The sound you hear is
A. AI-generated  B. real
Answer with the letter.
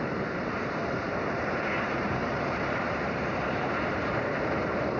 A